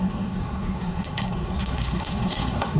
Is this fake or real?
fake